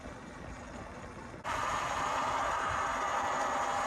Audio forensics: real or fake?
real